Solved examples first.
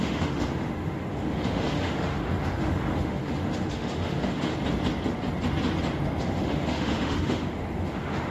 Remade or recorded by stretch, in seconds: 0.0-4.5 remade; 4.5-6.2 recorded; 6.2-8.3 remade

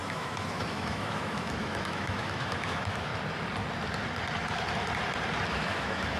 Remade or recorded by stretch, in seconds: 0.0-3.1 remade; 3.1-5.5 recorded; 5.5-6.2 remade